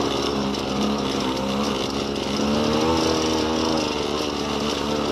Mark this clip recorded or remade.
recorded